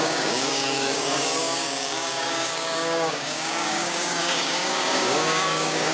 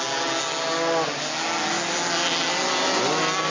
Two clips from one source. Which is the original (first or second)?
second